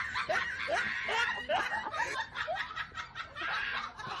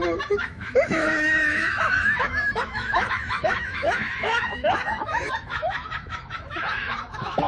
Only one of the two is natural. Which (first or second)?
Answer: first